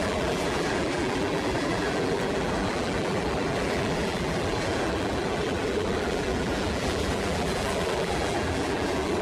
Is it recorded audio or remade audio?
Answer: remade